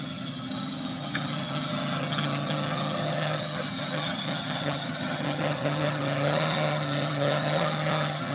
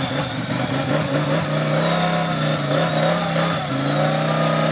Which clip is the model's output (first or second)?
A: first